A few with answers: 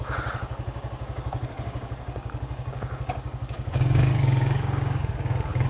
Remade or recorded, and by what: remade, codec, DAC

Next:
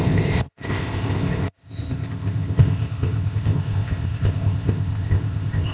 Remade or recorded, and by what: remade, codec, ZipCodec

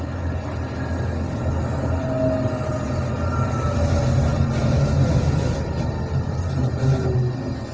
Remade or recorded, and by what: recorded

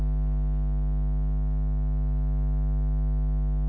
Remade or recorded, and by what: recorded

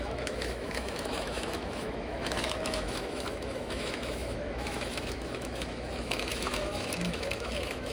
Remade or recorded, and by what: remade, autoencoder, DAC-VAE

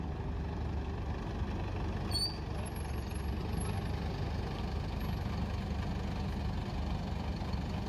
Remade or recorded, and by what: recorded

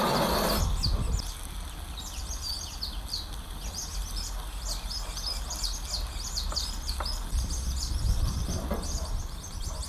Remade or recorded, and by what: recorded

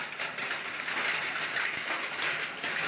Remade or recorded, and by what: recorded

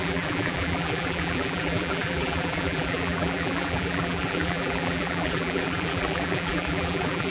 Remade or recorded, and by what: remade, vocoder, BigVGAN v2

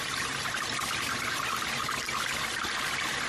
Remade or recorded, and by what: remade, vocoder, BigVGAN v2